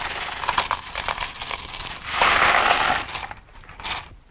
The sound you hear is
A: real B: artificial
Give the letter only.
A